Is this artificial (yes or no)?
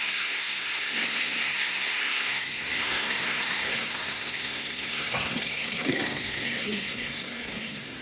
yes